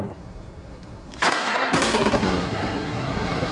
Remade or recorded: remade